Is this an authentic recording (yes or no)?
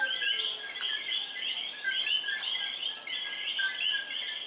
yes